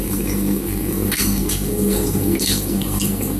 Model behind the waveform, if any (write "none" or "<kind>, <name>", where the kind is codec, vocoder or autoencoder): codec, SNAC